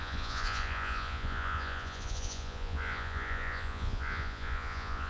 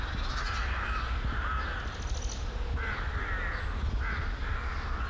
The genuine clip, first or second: second